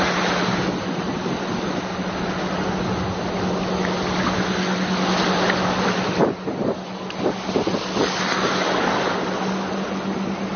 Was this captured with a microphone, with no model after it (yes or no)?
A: yes